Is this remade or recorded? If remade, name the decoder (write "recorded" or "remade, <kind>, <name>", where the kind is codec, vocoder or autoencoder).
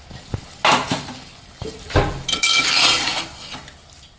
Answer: recorded